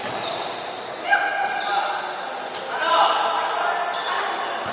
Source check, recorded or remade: recorded